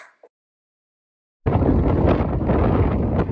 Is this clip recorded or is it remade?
recorded